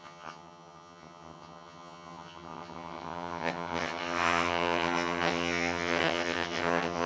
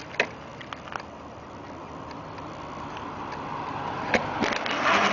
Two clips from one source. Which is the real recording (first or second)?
second